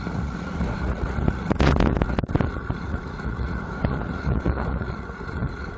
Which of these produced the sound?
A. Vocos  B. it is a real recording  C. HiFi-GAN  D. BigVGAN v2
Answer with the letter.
A